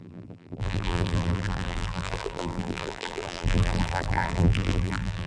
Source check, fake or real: fake